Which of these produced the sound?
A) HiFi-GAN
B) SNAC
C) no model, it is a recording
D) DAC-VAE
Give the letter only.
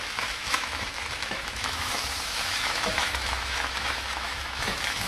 D